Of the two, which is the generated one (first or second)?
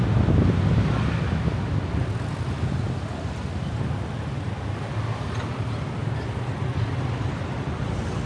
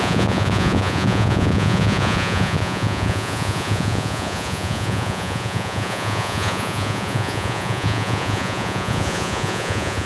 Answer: second